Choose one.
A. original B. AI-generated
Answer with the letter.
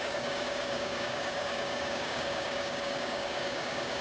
B